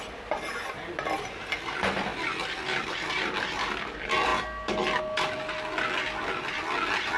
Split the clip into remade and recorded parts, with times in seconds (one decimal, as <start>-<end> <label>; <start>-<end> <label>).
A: 0.0-7.2 recorded